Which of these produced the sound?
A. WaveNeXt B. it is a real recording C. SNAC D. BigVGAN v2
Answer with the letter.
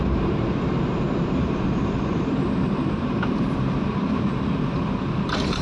D